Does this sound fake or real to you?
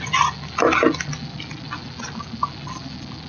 real